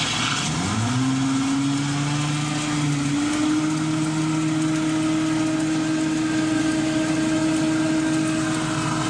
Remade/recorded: recorded